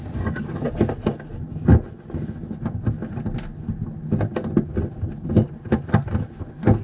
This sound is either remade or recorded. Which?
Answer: recorded